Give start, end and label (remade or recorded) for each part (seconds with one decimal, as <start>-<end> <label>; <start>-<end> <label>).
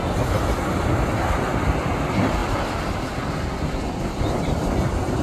0.0-2.4 recorded; 2.4-3.6 remade; 3.6-5.2 recorded